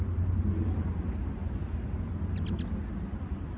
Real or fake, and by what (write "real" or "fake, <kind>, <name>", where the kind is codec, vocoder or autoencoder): real